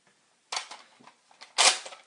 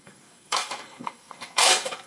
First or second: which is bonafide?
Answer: first